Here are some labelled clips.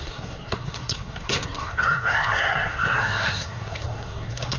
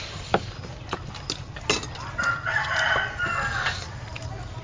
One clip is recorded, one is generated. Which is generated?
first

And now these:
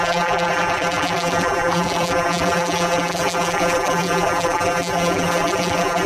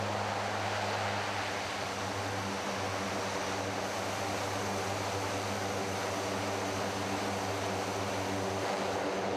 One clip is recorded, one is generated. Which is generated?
first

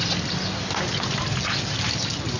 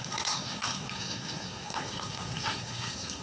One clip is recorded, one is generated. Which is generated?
second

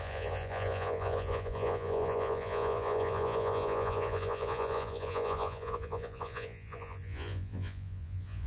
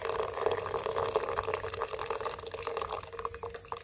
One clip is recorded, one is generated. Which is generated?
first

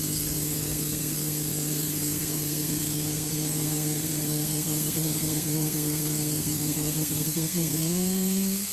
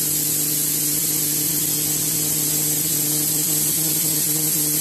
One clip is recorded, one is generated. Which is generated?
first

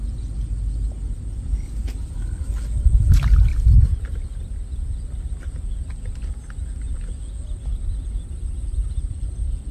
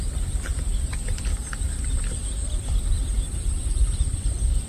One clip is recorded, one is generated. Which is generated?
second